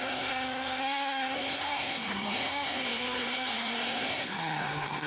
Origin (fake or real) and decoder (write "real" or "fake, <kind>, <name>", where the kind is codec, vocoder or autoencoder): fake, codec, SNAC